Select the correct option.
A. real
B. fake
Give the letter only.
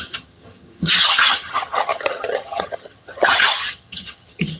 B